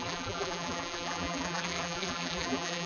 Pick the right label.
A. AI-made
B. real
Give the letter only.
A